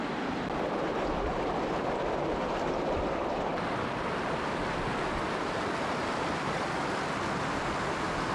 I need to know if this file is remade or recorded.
recorded